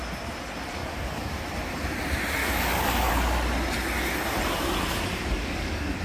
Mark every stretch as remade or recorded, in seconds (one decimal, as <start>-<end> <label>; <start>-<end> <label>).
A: 0.0-0.8 recorded; 0.8-1.3 remade; 1.3-2.4 recorded; 2.4-3.1 remade; 3.1-5.1 recorded; 5.1-6.0 remade